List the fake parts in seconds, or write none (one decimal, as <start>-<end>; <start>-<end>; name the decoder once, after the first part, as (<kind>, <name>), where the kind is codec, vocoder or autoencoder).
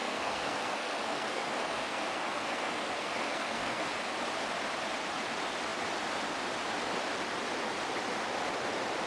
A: 0.0-3.9 (codec, SNAC)